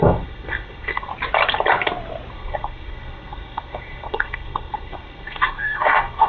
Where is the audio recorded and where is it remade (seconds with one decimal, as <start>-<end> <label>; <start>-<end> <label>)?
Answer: 0.0-1.1 remade; 1.1-2.3 recorded; 2.3-6.3 remade